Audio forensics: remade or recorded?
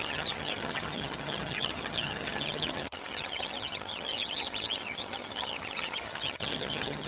remade